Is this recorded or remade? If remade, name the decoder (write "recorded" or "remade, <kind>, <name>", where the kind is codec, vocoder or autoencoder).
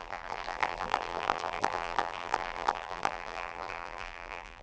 remade, vocoder, BigVGAN v2